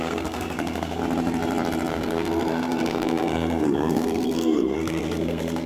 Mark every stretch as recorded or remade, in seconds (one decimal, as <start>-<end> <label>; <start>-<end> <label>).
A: 0.0-1.0 remade; 1.0-1.9 recorded; 1.9-5.7 remade